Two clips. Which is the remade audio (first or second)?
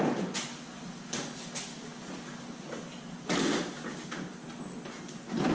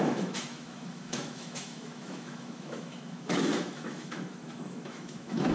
second